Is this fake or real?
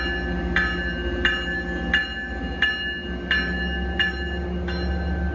real